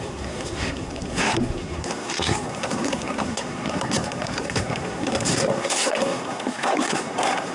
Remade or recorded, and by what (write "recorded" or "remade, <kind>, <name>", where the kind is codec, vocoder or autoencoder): remade, codec, SNAC